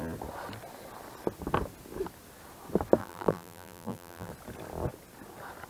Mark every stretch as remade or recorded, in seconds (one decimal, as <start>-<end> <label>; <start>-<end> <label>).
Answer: 0.0-3.0 recorded; 3.0-4.3 remade; 4.3-5.7 recorded